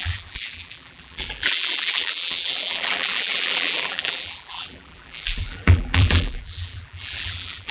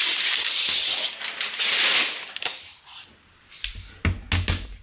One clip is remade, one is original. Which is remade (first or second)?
first